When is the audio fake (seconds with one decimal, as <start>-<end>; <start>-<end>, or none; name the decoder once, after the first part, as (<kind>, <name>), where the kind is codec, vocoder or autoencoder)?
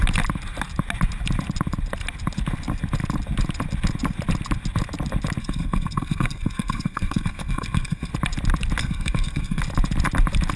5.4-8.1 (codec, SNAC); 8.8-9.6